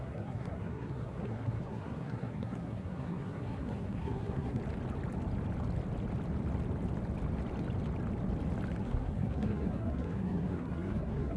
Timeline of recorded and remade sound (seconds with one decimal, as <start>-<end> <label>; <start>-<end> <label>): 0.0-4.6 remade; 4.6-8.8 recorded; 8.8-11.4 remade